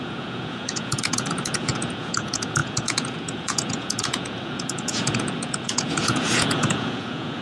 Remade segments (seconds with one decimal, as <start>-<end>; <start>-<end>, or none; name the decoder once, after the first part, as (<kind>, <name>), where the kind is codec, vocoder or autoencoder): 0.0-7.4 (vocoder, Vocos)